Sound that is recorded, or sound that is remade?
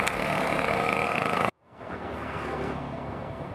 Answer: remade